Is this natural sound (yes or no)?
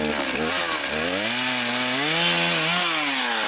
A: yes